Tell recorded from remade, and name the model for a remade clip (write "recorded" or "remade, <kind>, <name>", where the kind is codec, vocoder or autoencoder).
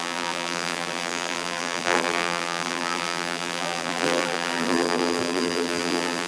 remade, vocoder, BigVGAN v2